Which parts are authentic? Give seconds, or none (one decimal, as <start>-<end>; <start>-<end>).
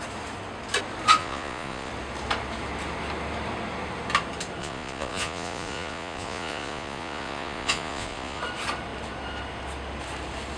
0.0-1.2; 1.9-4.6; 8.4-10.6